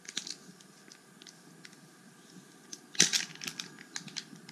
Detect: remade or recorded recorded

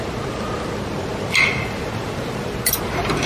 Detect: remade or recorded recorded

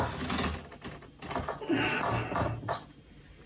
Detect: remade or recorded recorded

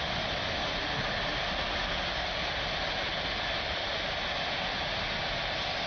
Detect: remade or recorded recorded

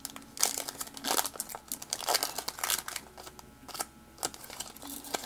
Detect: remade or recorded recorded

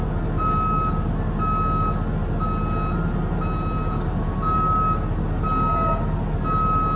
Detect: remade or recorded recorded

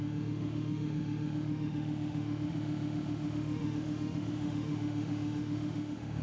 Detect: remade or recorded remade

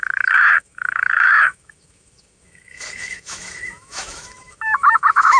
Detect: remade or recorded remade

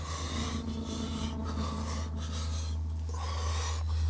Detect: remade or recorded recorded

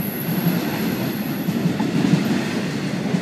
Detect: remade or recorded recorded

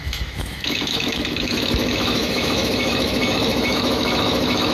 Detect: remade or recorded remade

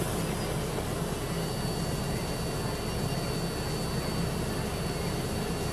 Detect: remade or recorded recorded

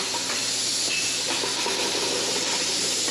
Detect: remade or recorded recorded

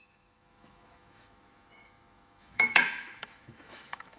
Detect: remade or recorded remade